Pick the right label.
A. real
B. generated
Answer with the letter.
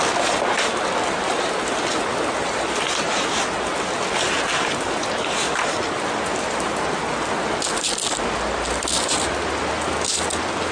A